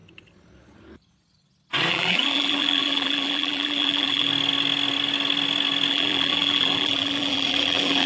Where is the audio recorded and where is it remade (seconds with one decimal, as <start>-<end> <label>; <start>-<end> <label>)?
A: 0.0-1.9 recorded; 1.9-4.3 remade; 4.3-5.9 recorded; 5.9-8.1 remade